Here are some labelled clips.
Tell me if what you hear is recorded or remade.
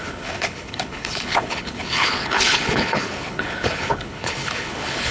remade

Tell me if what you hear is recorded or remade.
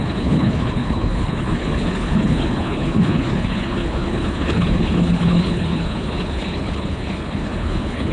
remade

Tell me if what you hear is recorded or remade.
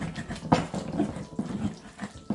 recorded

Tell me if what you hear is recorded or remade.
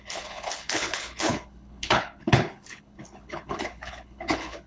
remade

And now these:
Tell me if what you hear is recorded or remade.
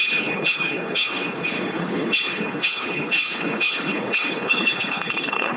remade